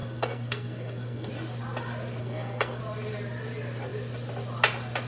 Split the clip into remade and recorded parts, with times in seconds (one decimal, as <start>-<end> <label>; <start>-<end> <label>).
0.0-1.3 remade; 1.3-2.2 recorded; 2.2-2.8 remade; 2.8-5.1 recorded